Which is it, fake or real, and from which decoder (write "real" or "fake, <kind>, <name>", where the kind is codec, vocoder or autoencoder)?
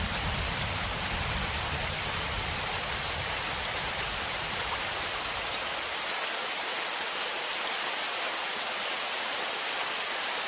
fake, vocoder, BigVGAN v2